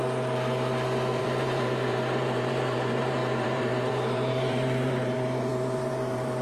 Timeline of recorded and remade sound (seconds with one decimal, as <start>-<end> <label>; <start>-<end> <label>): 0.0-1.2 recorded; 1.2-6.4 remade